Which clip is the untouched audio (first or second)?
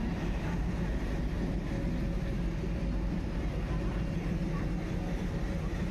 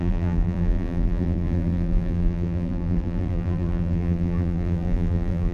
first